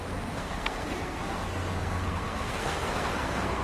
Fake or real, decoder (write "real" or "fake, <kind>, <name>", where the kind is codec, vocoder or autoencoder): fake, codec, SNAC